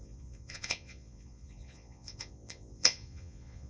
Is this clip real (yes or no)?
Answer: no